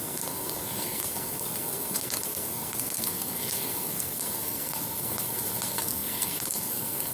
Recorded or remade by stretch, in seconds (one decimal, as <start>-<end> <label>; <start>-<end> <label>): 0.0-7.1 remade